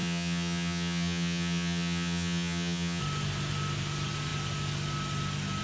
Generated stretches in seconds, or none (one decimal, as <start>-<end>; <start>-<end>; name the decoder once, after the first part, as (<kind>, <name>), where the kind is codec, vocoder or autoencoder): 0.0-3.0 (vocoder, HiFi-GAN)

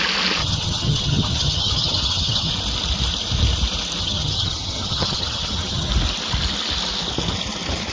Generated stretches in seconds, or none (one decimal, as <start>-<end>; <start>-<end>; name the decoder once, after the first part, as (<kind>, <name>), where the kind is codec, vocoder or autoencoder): 0.4-2.5 (vocoder, HiFi-GAN); 4.0-5.9

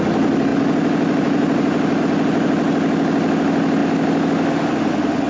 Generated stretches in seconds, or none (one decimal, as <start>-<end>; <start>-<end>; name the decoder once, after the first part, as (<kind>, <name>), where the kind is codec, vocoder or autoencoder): none

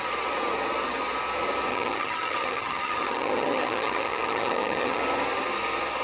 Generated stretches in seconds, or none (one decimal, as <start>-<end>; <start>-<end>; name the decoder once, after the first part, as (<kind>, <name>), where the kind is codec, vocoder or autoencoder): 1.7-5.0 (vocoder, HiFi-GAN)

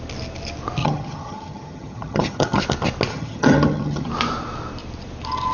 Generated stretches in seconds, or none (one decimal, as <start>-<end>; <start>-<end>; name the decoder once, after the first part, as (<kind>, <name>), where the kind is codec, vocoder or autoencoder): 0.8-2.6 (vocoder, HiFi-GAN); 3.1-4.1

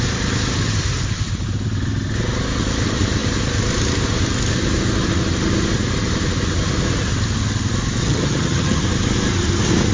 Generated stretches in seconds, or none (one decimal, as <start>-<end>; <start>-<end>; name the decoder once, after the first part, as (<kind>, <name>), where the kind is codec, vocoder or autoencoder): 8.0-8.8 (vocoder, HiFi-GAN)

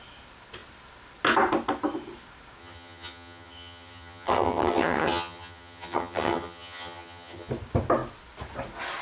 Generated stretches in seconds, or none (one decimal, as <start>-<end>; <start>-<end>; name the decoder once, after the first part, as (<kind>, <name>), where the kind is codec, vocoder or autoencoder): 2.6-7.5 (vocoder, HiFi-GAN)

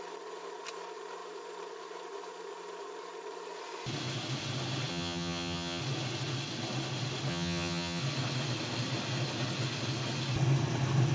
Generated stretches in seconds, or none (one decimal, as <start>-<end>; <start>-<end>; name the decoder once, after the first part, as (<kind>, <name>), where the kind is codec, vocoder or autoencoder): 4.9-5.8 (vocoder, HiFi-GAN); 7.3-8.0